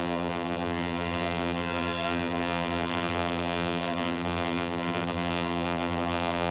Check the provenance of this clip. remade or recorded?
remade